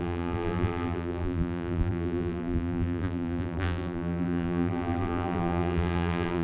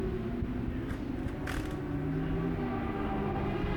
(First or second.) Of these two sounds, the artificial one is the first